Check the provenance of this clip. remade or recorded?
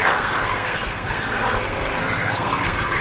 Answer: remade